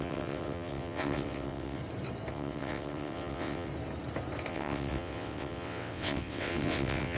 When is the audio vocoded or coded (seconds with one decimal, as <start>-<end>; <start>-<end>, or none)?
0.0-1.8; 2.3-3.7; 4.5-7.2